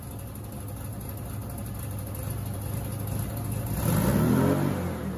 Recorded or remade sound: recorded